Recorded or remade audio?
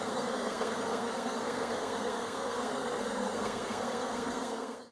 remade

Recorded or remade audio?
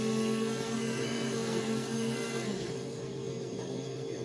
remade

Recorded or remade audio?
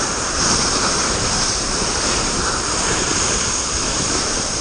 remade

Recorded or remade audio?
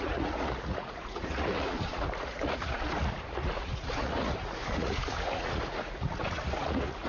remade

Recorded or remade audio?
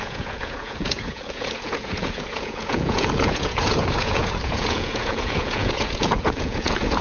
remade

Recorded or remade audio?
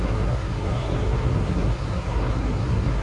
remade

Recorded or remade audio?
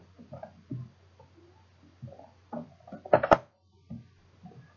recorded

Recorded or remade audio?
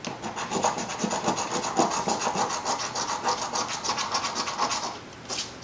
recorded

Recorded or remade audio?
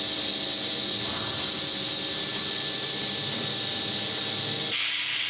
recorded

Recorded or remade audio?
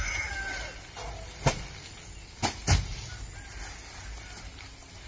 recorded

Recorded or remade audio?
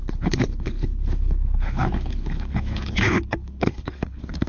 remade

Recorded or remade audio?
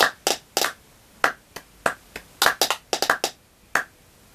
recorded